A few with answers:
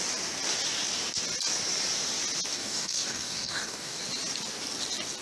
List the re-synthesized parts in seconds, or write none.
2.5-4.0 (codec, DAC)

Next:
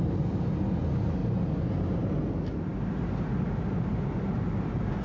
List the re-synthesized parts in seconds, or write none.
none

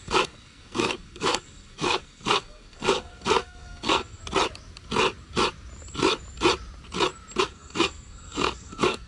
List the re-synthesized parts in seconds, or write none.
0.0-4.2 (codec, SNAC); 7.4-9.1

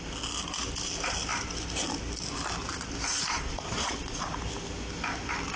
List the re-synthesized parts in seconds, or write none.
3.1-4.4 (vocoder, Vocos)